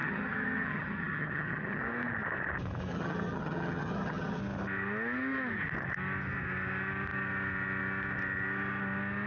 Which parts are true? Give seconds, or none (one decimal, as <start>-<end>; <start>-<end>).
1.8-2.9; 4.4-9.3